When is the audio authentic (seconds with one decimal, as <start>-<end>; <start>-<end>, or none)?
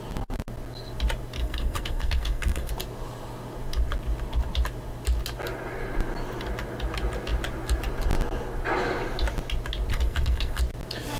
0.0-1.4; 2.7-9.9; 10.6-11.2